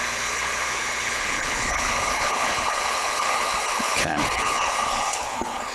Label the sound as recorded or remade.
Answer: remade